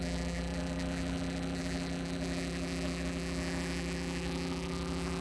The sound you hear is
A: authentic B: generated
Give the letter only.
B